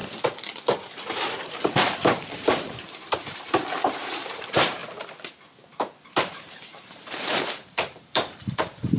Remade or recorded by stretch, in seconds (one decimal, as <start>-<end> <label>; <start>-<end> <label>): 0.0-1.3 recorded; 1.3-4.8 remade; 4.8-6.1 recorded; 6.1-9.0 remade